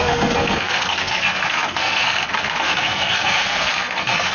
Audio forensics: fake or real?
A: fake